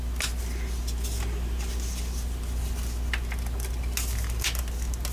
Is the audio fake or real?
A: real